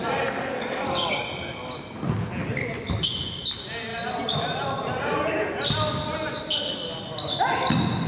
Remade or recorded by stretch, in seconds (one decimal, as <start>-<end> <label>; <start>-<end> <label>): 0.0-3.9 recorded; 3.9-5.3 remade; 5.3-8.1 recorded